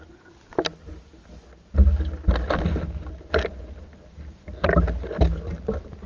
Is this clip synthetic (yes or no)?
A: no